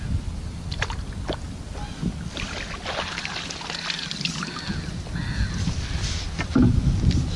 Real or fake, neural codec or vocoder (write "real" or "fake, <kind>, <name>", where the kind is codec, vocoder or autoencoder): real